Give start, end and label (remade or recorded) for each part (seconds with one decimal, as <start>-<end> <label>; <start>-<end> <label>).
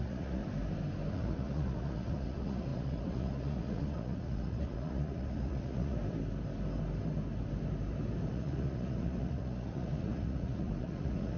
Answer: 0.0-0.4 remade; 0.4-1.1 recorded; 1.1-6.0 remade; 6.0-8.3 recorded; 8.3-11.4 remade